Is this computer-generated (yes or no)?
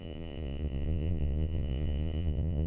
yes